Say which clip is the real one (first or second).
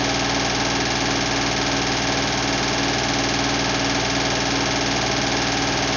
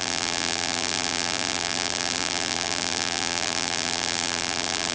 first